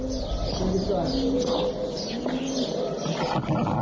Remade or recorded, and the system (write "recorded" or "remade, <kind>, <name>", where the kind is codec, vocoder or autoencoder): recorded